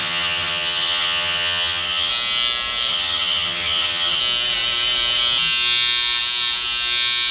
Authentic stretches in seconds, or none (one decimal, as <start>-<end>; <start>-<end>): 2.1-2.9; 4.2-7.3